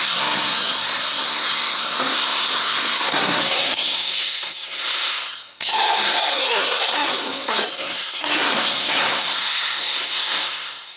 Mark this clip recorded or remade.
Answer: remade